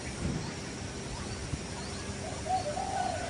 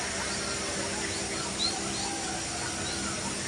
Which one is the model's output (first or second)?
first